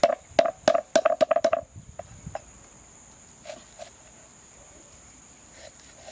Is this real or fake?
real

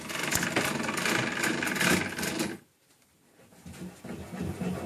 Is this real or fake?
real